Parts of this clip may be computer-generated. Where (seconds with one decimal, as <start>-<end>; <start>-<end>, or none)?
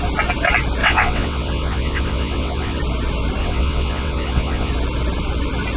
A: 0.8-2.8; 3.4-4.7